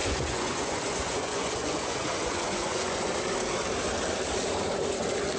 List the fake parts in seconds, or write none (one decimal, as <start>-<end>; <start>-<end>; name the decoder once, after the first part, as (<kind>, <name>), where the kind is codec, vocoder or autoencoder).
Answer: 0.0-3.1 (vocoder, Vocos)